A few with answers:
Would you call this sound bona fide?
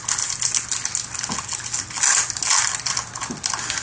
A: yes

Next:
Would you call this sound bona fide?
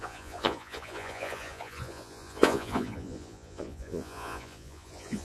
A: no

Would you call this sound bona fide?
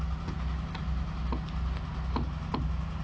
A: yes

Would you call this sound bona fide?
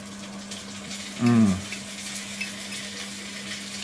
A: yes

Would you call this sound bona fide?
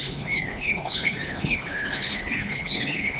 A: no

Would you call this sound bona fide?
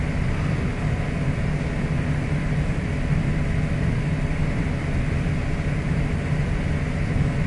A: yes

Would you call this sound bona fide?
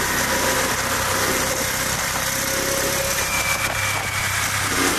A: yes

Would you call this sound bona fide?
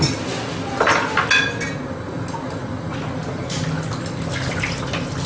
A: yes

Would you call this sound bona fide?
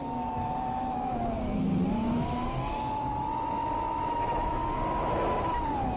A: no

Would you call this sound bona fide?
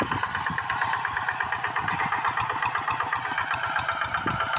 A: yes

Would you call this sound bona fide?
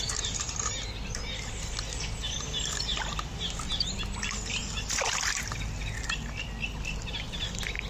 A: yes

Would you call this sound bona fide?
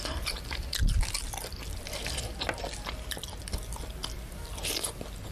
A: yes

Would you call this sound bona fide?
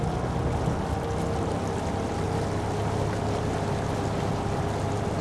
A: yes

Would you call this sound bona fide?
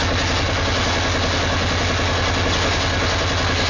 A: yes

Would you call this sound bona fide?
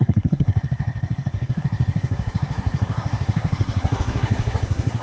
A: no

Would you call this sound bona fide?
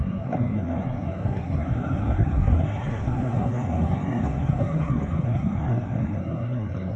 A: no